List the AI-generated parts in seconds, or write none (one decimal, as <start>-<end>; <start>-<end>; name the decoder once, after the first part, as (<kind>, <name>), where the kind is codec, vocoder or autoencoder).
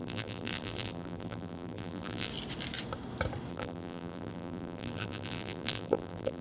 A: 0.0-2.3 (vocoder, BigVGAN v2); 3.5-6.4